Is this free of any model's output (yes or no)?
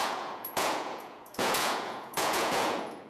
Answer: no